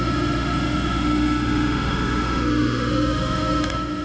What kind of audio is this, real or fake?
fake